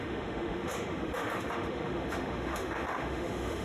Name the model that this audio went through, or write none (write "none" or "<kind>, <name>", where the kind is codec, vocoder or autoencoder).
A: autoencoder, DAC-VAE